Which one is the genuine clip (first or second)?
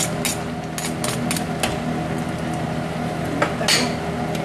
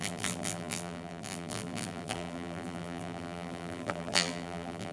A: first